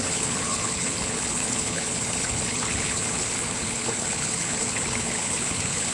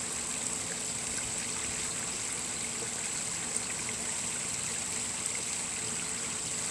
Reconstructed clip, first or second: first